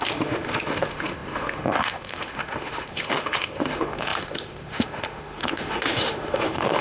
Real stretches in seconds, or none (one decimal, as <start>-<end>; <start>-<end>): none